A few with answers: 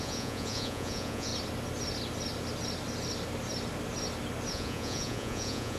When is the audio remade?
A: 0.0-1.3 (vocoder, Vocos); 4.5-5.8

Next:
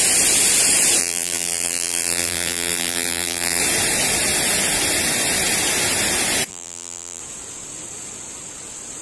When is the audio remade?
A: 1.0-3.6 (vocoder, BigVGAN v2); 6.5-7.2

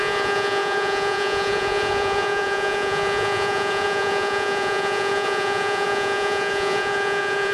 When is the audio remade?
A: 0.0-7.5 (vocoder, Vocos)

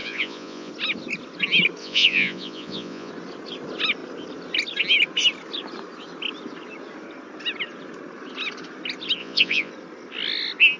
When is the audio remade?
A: 0.0-0.7 (vocoder, Vocos); 1.8-3.1; 9.2-9.7

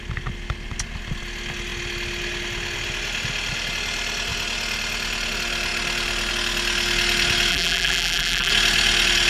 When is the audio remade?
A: 7.5-8.5 (vocoder, BigVGAN v2)

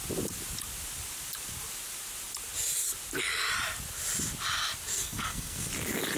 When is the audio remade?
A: 4.9-5.7 (codec, SNAC)

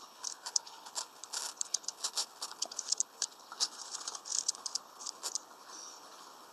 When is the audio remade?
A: 0.0-6.5 (codec, HILCodec)

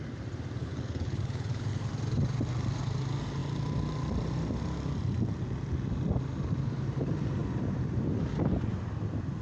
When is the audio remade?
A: 0.6-1.9 (codec, HILCodec)